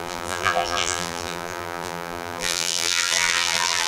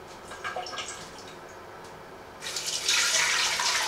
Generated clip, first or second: first